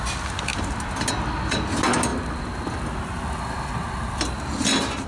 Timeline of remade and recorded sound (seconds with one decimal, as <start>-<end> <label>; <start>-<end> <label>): 0.0-5.1 recorded